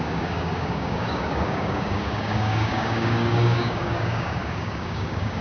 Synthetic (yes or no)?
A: yes